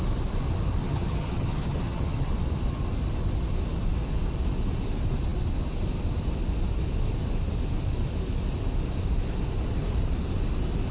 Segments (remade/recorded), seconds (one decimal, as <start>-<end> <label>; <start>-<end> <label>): 0.0-0.8 recorded; 0.8-2.3 remade; 2.3-10.9 recorded

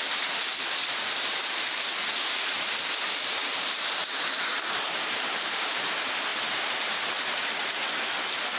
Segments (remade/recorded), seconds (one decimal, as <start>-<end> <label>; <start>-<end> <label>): 0.0-3.4 recorded; 3.4-5.8 remade; 5.8-6.3 recorded; 6.3-7.5 remade; 7.5-8.6 recorded

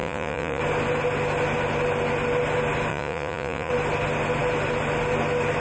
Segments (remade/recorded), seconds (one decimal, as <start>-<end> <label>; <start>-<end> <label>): 0.0-0.6 remade; 0.6-2.9 recorded; 2.9-3.7 remade; 3.7-5.6 recorded

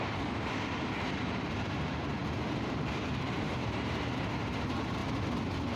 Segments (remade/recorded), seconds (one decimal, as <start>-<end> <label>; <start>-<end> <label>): 0.0-5.0 remade; 5.0-5.8 recorded

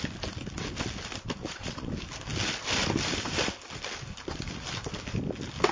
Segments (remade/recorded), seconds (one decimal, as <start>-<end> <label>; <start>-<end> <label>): 0.0-1.4 recorded; 1.4-1.9 remade; 1.9-5.7 recorded

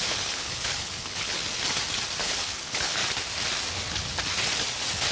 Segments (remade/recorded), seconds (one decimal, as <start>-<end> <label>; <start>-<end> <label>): 0.0-1.4 remade; 1.4-2.2 recorded; 2.2-3.0 remade; 3.0-5.1 recorded

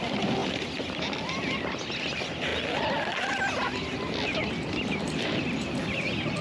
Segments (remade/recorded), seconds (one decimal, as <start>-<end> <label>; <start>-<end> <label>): 0.0-6.4 recorded

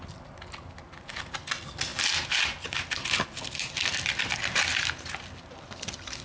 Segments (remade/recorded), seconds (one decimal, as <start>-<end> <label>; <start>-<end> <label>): 0.0-6.2 recorded